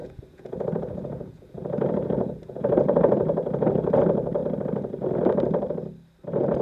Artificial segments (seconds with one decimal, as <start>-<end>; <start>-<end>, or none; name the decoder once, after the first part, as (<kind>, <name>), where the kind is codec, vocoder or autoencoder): 0.0-3.9 (vocoder, Vocos)